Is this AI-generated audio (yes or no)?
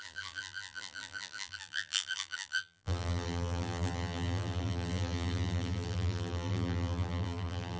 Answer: yes